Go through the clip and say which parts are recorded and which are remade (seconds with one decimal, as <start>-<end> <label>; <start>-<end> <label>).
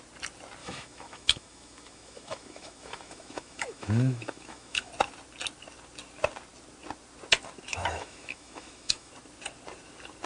0.0-0.6 recorded; 0.6-4.9 remade; 4.9-7.7 recorded; 7.7-9.1 remade; 9.1-10.3 recorded